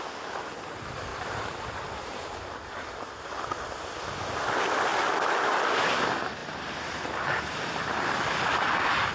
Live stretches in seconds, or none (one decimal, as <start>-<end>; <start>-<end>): 0.0-1.1; 1.6-6.4; 7.8-9.1